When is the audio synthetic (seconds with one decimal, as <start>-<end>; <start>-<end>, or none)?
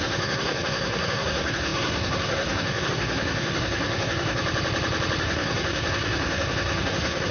0.0-4.4; 5.2-7.3